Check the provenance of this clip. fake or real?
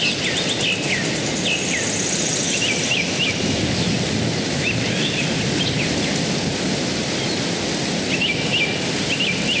real